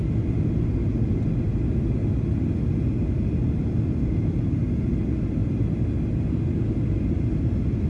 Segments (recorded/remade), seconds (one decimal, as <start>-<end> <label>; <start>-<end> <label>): 0.0-7.9 recorded